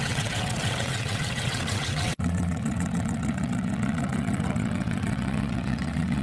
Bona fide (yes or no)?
no